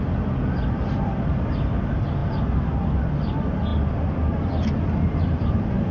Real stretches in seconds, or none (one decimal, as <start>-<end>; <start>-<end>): 0.0-5.9